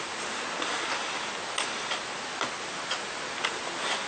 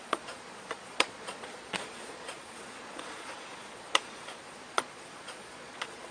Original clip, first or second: first